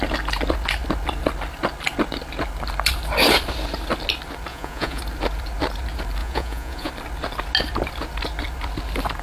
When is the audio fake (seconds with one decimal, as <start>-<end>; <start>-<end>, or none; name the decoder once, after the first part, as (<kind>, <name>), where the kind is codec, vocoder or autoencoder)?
4.5-5.0 (vocoder, Vocos); 6.2-6.9